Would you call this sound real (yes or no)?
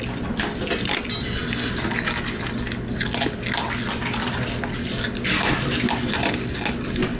yes